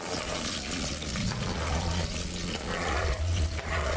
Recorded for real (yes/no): no